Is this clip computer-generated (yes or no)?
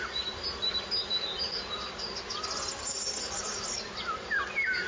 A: no